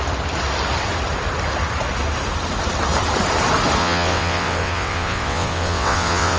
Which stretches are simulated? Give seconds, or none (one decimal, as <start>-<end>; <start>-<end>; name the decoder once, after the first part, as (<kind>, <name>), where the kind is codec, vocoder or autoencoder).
3.8-6.4 (vocoder, WaveNeXt)